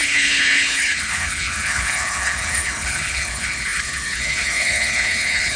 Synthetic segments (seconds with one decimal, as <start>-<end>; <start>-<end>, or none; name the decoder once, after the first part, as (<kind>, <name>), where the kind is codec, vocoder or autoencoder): 0.0-5.6 (codec, HILCodec)